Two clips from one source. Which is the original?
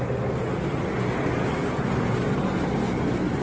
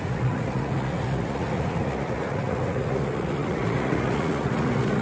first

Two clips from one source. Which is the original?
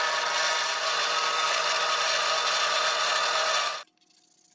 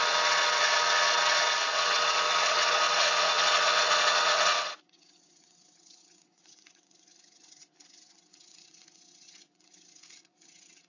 first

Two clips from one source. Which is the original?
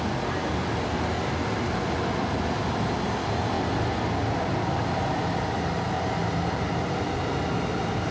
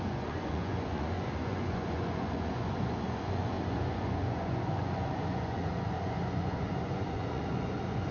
first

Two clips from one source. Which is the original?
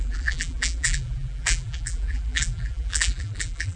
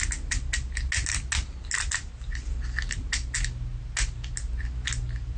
second